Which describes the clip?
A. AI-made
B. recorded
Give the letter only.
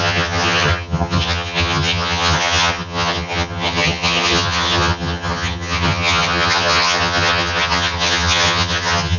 A